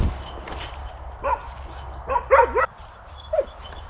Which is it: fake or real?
real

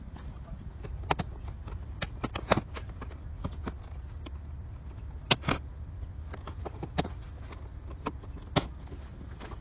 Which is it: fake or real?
real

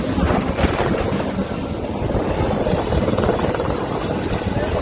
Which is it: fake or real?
real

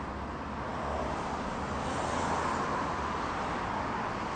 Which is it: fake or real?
real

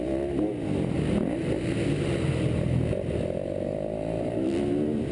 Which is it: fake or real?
real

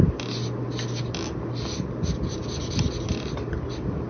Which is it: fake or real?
real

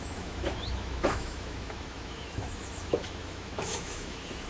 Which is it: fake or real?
fake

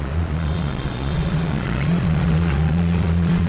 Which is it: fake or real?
fake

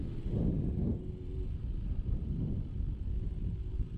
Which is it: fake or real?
real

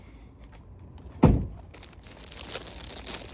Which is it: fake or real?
real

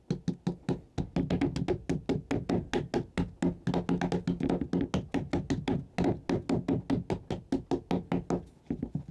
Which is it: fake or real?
real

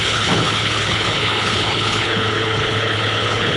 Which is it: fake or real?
fake